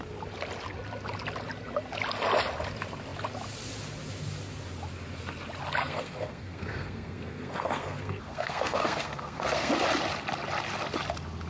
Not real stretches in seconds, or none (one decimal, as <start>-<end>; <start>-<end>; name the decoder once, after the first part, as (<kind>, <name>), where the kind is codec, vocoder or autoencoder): 5.8-9.7 (codec, SNAC)